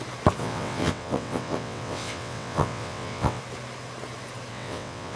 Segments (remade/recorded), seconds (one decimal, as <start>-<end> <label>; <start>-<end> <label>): 0.0-0.4 recorded; 0.4-3.4 remade; 3.4-4.5 recorded; 4.5-5.2 remade